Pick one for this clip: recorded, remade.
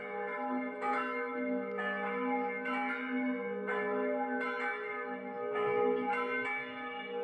recorded